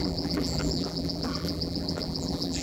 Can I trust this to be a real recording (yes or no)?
no